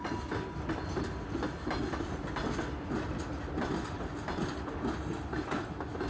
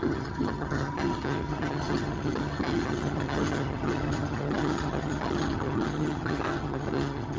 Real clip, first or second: first